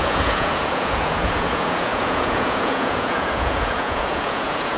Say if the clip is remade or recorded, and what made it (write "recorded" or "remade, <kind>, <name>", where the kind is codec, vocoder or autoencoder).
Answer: remade, vocoder, Vocos